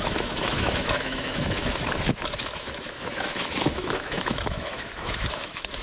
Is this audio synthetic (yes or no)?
yes